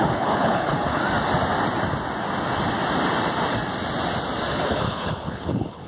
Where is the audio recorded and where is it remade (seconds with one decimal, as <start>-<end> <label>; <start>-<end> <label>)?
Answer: 0.0-1.0 remade; 1.0-4.5 recorded; 4.5-5.9 remade